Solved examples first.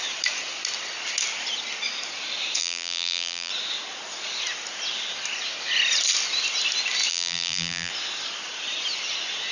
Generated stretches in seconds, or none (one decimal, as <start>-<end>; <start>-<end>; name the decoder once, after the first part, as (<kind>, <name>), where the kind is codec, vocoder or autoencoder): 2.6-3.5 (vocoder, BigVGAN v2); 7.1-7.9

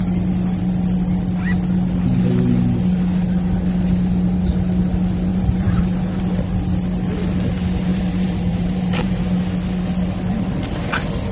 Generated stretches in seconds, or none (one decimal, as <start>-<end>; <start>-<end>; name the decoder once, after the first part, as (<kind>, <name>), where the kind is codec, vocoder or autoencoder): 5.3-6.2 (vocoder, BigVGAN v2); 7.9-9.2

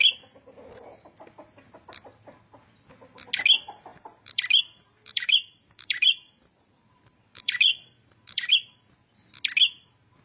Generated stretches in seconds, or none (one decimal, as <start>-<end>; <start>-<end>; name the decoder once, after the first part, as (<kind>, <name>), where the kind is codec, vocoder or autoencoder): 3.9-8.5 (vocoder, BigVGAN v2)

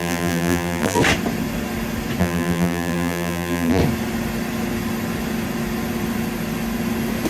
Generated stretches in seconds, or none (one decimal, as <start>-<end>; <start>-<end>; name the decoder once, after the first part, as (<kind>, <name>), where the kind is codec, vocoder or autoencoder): 0.0-1.0 (vocoder, BigVGAN v2); 2.2-3.8

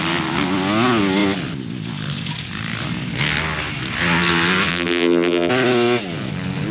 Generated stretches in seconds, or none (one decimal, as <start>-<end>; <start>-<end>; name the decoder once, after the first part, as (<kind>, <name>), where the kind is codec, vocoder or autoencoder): 4.7-5.5 (vocoder, BigVGAN v2)

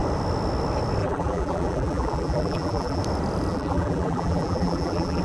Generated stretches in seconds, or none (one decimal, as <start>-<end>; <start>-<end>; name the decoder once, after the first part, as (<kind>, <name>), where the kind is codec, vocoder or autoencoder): 1.0-3.0 (vocoder, BigVGAN v2); 3.5-5.2